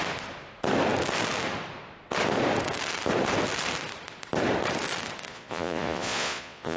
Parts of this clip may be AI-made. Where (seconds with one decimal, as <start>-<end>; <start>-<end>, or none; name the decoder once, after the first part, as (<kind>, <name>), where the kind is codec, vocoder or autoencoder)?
5.3-6.8 (vocoder, Vocos)